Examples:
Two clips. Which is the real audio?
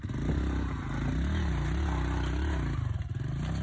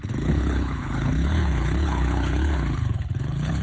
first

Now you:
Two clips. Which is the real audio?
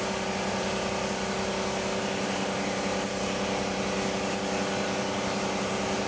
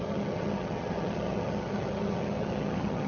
first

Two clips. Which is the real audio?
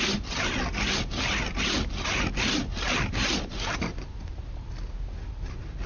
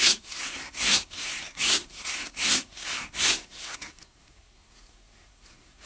first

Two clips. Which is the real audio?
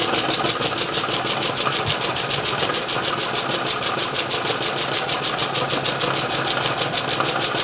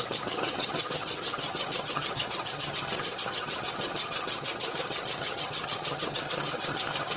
first